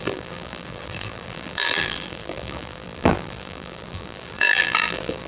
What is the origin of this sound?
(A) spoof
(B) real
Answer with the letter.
A